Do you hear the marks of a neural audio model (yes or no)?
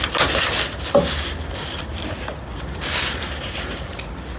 no